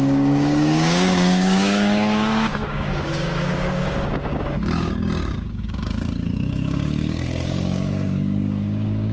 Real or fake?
fake